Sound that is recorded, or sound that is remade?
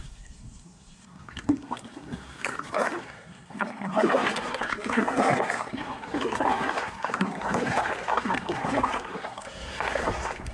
remade